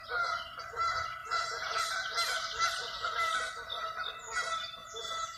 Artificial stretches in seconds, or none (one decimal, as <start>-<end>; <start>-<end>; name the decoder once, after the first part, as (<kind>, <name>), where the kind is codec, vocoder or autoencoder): 1.2-1.8 (vocoder, Vocos); 2.8-3.3; 4.8-5.4